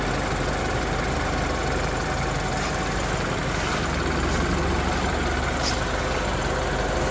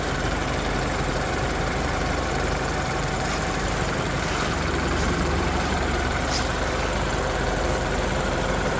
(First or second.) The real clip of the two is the first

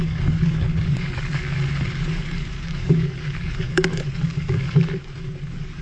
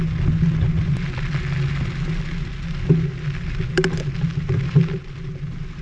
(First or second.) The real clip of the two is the second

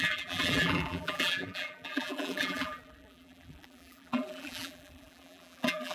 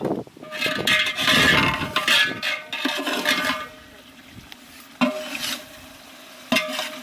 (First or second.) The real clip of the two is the second